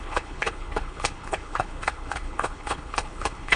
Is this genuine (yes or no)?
no